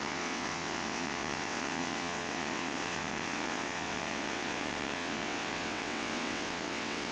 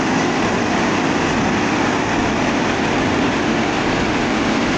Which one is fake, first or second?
first